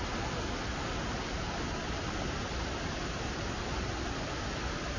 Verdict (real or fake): real